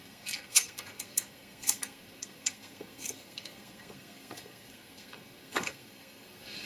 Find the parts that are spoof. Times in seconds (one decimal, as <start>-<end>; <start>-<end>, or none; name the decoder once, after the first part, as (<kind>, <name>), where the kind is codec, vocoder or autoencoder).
0.0-6.7 (codec, SNAC)